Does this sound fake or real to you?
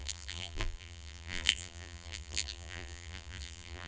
fake